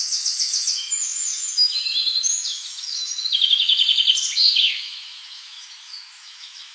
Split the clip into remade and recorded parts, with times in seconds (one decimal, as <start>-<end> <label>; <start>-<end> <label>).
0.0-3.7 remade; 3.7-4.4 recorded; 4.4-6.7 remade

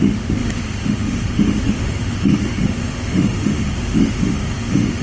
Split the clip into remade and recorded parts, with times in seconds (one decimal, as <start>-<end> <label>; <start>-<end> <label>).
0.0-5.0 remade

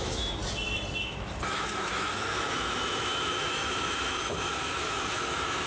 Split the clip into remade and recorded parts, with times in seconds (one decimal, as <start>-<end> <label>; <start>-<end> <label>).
0.0-0.4 remade; 0.4-1.0 recorded; 1.0-5.7 remade

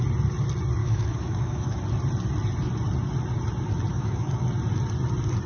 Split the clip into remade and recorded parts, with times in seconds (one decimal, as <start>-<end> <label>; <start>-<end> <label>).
0.0-0.8 recorded; 0.8-1.8 remade; 1.8-3.9 recorded; 3.9-4.4 remade; 4.4-5.5 recorded

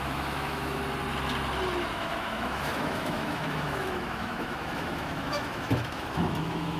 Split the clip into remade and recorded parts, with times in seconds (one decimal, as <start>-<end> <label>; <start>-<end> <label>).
0.0-0.8 remade; 0.8-1.9 recorded; 1.9-6.8 remade

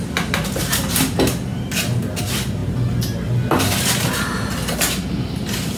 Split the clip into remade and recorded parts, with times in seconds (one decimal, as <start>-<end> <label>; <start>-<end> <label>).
0.0-5.8 recorded

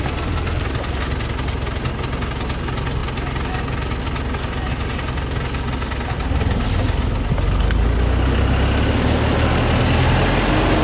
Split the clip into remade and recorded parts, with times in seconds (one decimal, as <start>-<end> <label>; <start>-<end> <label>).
0.0-10.8 recorded

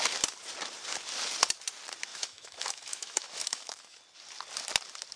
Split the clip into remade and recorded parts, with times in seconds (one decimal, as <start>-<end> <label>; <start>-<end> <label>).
0.0-2.1 recorded; 2.1-4.0 remade; 4.0-5.2 recorded